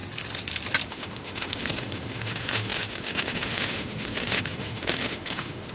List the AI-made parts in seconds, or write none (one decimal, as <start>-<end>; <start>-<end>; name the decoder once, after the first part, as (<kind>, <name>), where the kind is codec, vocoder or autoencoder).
0.9-5.7 (autoencoder, DAC-VAE)